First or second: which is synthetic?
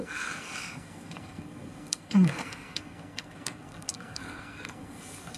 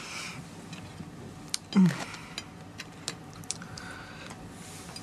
first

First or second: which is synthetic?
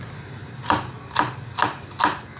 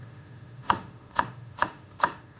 second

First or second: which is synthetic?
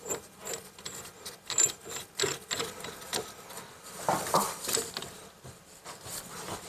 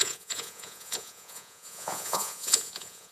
second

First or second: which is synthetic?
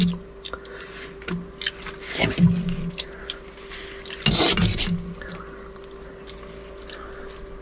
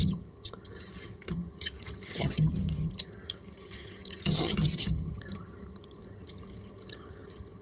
second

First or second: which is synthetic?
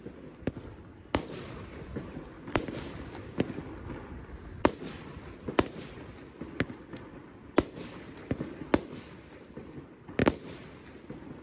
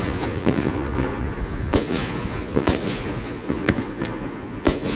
second